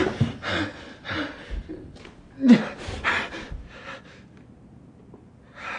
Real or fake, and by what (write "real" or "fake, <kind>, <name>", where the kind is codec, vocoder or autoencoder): real